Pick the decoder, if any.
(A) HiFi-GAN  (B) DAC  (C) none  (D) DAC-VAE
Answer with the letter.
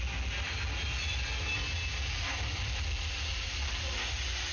C